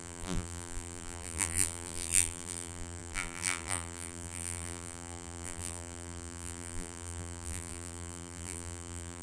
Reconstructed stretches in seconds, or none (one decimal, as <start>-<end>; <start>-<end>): 0.0-9.2